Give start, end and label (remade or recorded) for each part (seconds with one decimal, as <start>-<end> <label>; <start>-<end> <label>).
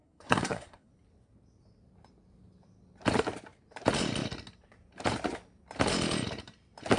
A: 0.0-0.9 remade; 0.9-7.0 recorded